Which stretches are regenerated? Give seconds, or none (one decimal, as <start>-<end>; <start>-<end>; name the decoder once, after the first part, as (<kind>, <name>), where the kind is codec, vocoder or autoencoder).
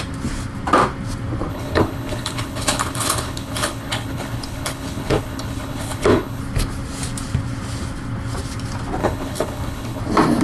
1.5-6.4 (codec, HILCodec); 9.0-10.0